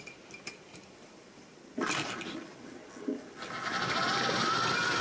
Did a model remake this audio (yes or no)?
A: no